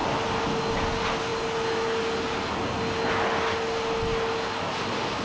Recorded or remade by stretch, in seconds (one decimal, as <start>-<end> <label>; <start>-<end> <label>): 0.0-5.2 recorded